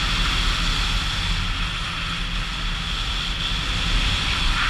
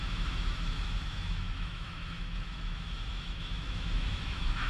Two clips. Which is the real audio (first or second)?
first